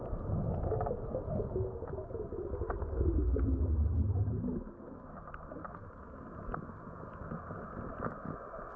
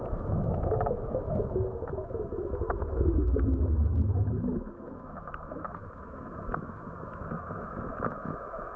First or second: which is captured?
first